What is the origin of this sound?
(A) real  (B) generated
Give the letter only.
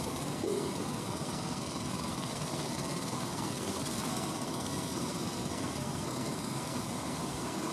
B